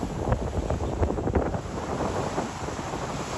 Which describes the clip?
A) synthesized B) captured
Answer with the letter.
B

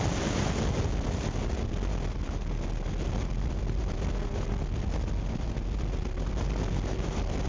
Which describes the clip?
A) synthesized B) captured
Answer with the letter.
B